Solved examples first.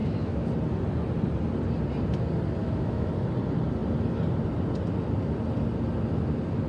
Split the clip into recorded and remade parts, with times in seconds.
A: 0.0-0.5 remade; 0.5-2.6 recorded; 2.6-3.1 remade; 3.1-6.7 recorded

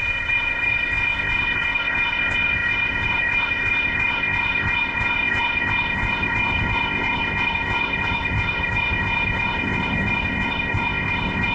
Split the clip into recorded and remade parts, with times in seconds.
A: 0.0-11.5 remade